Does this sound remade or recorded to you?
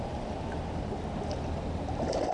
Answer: recorded